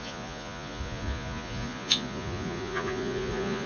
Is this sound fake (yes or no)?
yes